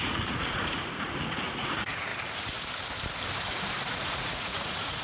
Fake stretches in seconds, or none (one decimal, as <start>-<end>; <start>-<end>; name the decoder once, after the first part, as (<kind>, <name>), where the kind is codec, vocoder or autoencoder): 0.0-2.1 (vocoder, Vocos); 3.9-5.0